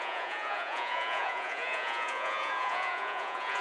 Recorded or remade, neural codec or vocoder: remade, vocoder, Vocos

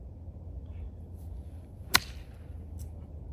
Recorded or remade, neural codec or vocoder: recorded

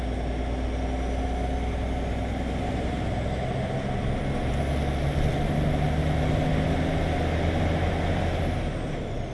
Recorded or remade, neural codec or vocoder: recorded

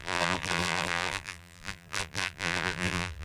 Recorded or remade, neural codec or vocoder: remade, vocoder, BigVGAN v2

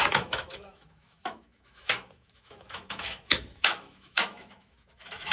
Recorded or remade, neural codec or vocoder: remade, autoencoder, DAC-VAE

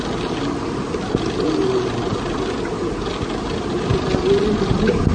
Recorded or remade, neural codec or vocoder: recorded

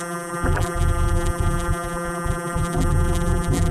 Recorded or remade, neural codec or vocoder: remade, vocoder, BigVGAN v2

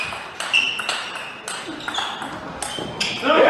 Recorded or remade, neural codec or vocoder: recorded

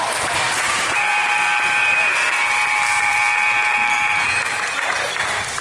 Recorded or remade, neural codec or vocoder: remade, vocoder, BigVGAN v2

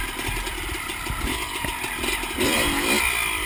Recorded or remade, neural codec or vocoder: recorded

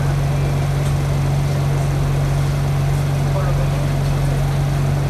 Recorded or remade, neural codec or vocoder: recorded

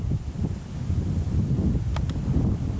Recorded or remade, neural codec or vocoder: recorded